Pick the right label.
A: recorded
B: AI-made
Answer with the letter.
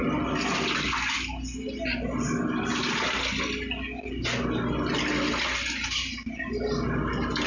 A